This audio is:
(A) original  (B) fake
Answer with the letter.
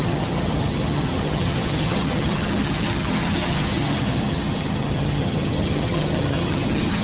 B